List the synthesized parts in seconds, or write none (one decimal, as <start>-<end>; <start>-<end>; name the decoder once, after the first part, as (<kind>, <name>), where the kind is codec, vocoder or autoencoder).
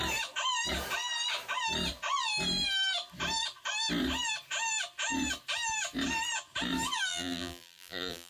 7.1-8.3 (vocoder, BigVGAN v2)